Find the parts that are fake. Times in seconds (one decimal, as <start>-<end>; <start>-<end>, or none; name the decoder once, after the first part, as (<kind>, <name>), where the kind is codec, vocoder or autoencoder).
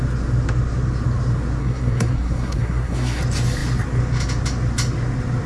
1.6-3.2 (codec, SNAC)